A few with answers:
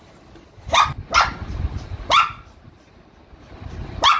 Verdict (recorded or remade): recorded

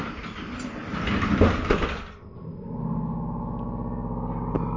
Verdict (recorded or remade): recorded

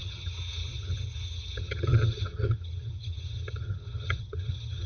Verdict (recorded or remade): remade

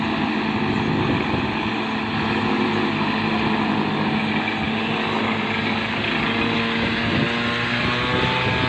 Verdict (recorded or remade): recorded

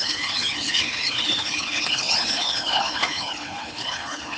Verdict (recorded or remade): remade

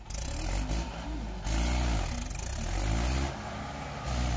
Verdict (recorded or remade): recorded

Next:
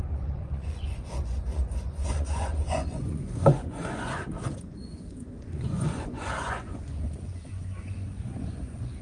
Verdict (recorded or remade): remade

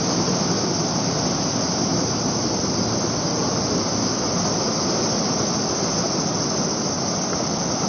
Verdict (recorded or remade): recorded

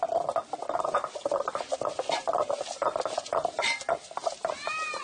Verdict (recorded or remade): recorded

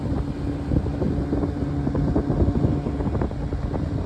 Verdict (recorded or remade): recorded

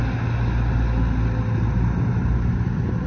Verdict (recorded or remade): recorded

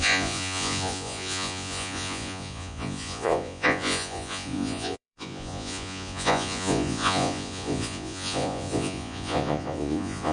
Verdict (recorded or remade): remade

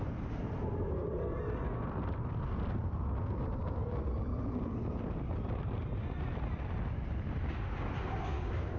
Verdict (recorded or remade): recorded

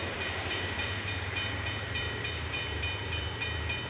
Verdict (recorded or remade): remade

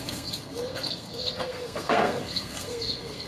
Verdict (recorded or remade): remade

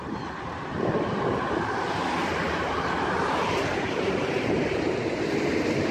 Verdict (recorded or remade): remade